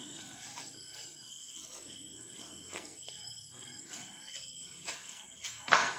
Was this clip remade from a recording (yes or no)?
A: yes